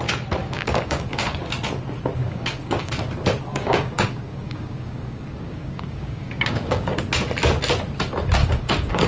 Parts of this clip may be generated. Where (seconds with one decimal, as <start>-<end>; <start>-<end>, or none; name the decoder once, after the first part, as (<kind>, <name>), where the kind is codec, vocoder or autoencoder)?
0.4-1.4 (codec, DAC); 2.2-2.9; 3.5-7.0; 8.4-9.1

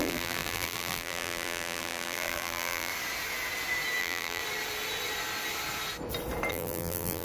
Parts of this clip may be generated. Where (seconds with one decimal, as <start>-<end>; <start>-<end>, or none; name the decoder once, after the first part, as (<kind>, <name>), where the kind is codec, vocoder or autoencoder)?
0.0-2.9 (vocoder, BigVGAN v2); 4.0-4.4; 6.5-7.2

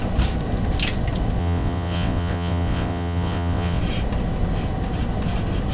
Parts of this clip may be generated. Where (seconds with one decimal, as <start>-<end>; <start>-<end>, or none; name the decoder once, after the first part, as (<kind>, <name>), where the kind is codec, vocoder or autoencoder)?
1.4-3.8 (vocoder, WaveNeXt)

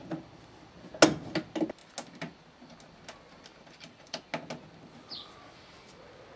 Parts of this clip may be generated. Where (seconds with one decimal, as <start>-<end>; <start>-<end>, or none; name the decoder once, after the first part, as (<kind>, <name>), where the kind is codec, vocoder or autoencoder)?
3.5-4.2 (vocoder, BigVGAN v2)

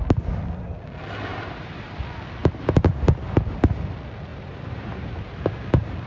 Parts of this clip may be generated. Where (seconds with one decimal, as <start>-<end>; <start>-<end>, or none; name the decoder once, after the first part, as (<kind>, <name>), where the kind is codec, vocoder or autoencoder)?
1.3-1.8 (vocoder, BigVGAN v2); 4.3-6.1

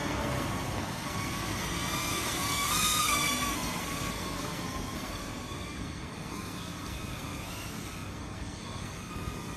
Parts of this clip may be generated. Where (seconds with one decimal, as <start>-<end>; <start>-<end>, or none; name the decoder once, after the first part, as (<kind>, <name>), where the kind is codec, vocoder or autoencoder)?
0.0-9.6 (codec, SNAC)

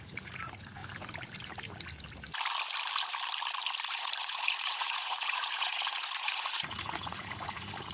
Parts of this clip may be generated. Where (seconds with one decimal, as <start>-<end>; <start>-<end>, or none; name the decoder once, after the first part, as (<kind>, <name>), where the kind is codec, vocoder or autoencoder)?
0.0-0.8 (vocoder, Vocos); 3.9-7.9